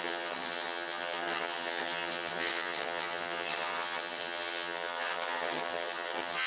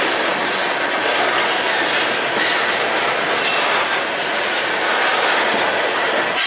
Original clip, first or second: second